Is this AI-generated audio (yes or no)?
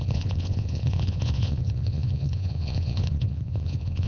yes